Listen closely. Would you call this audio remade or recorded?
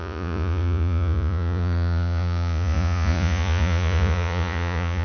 remade